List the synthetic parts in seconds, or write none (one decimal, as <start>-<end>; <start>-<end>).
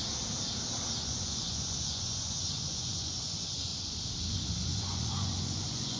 1.0-3.7; 4.3-6.0